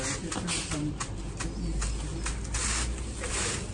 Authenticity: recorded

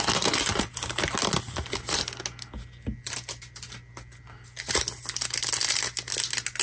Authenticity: recorded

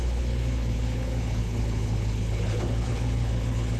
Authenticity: remade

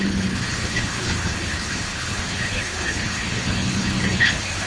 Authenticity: remade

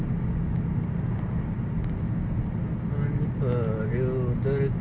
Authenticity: recorded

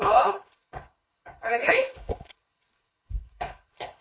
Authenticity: remade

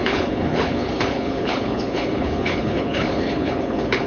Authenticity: remade